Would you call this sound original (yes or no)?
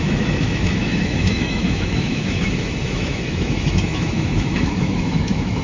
no